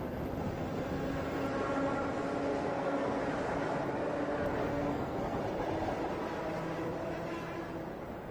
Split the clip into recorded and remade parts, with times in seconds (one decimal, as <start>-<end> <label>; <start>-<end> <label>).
0.0-2.5 recorded; 2.5-3.2 remade; 3.2-4.7 recorded; 4.7-5.4 remade; 5.4-8.3 recorded